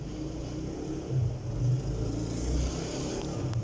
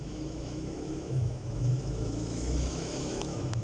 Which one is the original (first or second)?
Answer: first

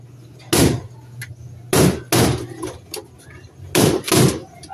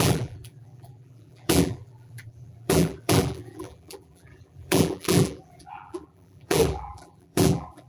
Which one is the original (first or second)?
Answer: first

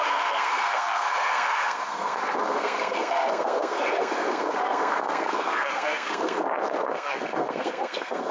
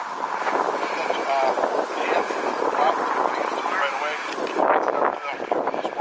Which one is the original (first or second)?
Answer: second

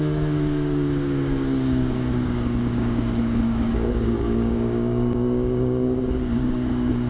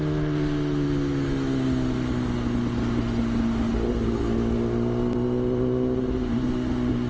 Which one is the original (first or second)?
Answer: second